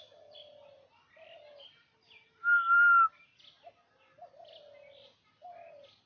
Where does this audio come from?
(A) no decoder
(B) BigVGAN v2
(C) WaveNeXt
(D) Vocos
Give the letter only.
A